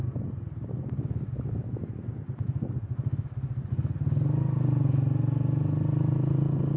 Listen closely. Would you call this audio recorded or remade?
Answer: recorded